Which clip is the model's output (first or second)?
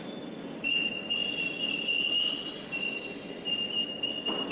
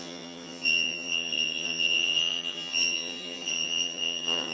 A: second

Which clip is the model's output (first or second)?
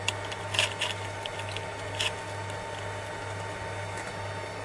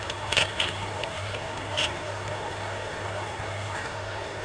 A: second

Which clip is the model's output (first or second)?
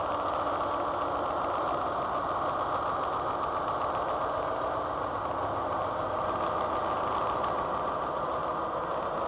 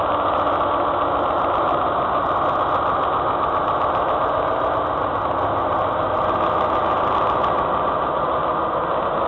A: first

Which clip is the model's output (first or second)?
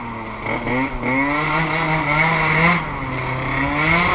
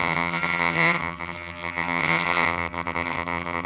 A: second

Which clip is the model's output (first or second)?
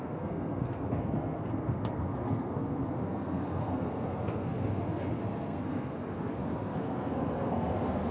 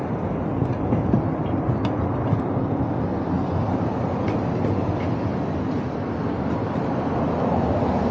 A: first